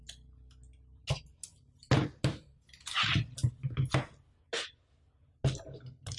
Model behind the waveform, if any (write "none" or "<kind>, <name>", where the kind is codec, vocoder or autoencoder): none